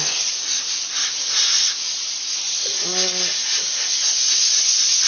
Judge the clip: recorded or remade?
recorded